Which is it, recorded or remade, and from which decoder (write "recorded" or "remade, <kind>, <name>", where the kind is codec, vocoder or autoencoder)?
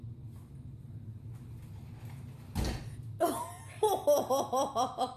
recorded